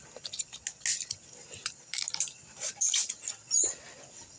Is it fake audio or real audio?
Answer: real